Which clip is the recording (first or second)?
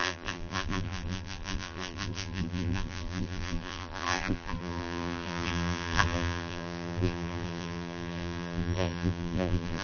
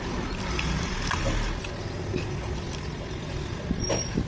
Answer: second